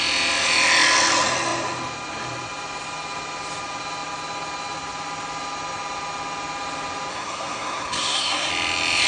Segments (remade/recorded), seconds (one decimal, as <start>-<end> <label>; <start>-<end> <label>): 0.0-7.1 recorded; 7.1-8.5 remade; 8.5-9.1 recorded